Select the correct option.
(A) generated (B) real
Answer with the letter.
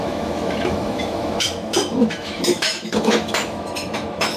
A